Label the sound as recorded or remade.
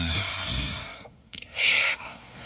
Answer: remade